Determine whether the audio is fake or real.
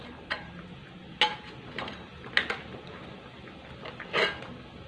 real